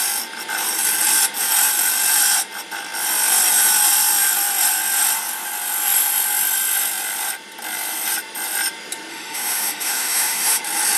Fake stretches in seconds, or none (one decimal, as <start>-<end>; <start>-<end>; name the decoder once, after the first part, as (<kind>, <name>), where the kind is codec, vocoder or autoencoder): 9.1-10.6 (autoencoder, DAC-VAE)